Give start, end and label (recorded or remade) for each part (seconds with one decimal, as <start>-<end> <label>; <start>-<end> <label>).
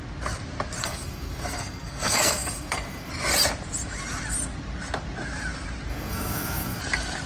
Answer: 0.0-0.8 recorded; 0.8-3.1 remade; 3.1-5.9 recorded; 5.9-6.8 remade; 6.8-7.3 recorded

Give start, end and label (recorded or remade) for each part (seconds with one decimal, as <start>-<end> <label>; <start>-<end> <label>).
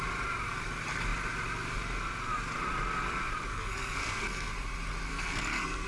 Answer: 0.0-3.5 recorded; 3.5-4.5 remade; 4.5-5.1 recorded; 5.1-5.9 remade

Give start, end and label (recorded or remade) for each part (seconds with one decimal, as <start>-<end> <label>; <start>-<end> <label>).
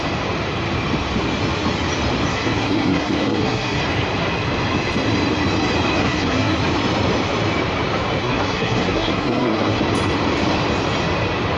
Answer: 0.0-2.3 recorded; 2.3-3.8 remade; 3.8-6.0 recorded; 6.0-6.6 remade; 6.6-8.2 recorded; 8.2-9.8 remade; 9.8-11.6 recorded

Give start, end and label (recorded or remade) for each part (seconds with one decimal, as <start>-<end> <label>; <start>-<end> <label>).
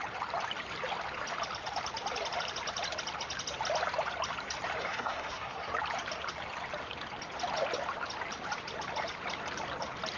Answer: 0.0-4.8 recorded; 4.8-5.7 remade; 5.7-10.2 recorded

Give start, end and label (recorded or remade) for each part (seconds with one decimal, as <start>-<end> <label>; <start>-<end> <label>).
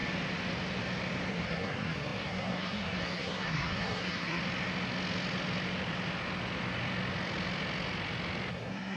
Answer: 0.0-1.3 recorded; 1.3-4.4 remade; 4.4-8.5 recorded; 8.5-9.0 remade